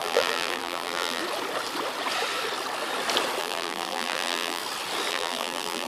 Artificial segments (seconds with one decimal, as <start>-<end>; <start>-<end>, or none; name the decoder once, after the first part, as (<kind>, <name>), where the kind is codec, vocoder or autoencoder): 0.0-1.2 (vocoder, BigVGAN v2); 3.4-4.6; 5.1-5.9